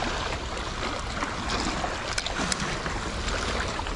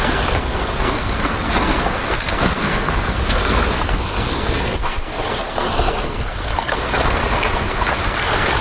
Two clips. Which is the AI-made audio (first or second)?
second